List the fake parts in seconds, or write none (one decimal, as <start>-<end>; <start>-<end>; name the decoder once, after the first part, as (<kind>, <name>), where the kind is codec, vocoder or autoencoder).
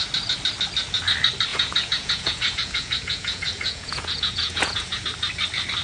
1.5-5.0 (vocoder, Vocos)